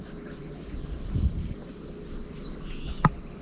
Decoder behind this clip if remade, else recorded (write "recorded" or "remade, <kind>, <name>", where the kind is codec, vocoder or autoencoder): recorded